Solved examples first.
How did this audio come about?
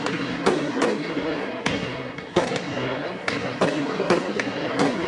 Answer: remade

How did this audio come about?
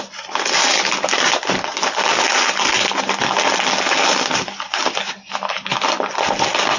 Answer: recorded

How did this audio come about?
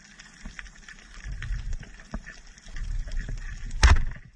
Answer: recorded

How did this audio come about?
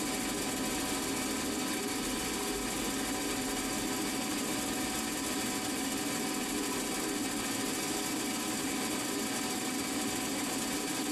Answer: recorded